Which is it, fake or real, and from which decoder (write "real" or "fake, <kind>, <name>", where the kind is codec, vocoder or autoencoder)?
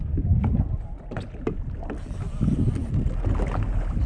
real